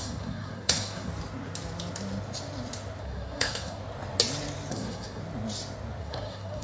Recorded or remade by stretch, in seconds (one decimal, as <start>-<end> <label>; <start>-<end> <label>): 0.0-1.1 remade; 1.1-3.0 recorded; 3.0-3.8 remade; 3.8-4.7 recorded; 4.7-5.2 remade; 5.2-6.0 recorded; 6.0-6.6 remade